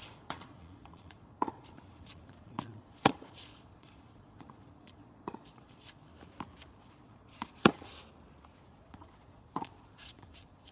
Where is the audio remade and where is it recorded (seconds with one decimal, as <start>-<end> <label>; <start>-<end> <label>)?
0.0-6.1 remade; 6.1-6.7 recorded; 6.7-7.9 remade; 7.9-8.5 recorded; 8.5-10.7 remade